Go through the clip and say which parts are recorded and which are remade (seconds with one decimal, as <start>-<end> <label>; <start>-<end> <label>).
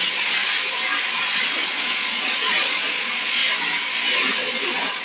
0.0-0.4 remade; 0.4-1.1 recorded; 1.1-3.4 remade; 3.4-4.6 recorded; 4.6-5.0 remade